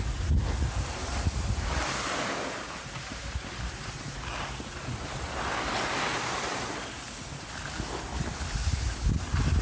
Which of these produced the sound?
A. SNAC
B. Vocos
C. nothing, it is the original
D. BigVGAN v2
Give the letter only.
C